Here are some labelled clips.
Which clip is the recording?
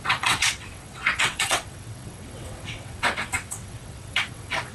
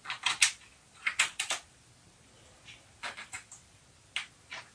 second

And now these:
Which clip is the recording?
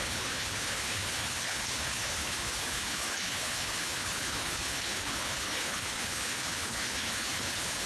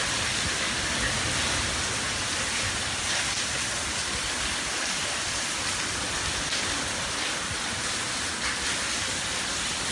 second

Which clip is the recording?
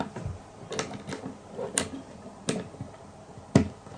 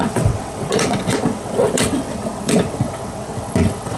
first